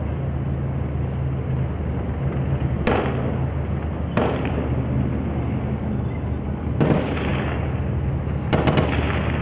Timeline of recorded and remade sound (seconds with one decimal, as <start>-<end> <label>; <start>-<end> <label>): 0.0-9.4 recorded